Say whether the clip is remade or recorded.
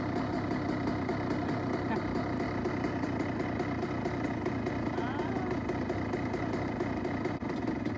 recorded